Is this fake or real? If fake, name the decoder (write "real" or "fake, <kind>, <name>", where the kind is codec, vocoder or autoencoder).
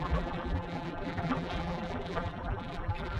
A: fake, vocoder, BigVGAN v2